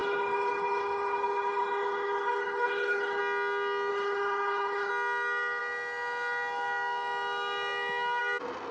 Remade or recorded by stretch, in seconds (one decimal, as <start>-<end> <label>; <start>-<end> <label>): 0.0-3.2 remade; 3.2-3.9 recorded; 3.9-4.9 remade; 4.9-8.7 recorded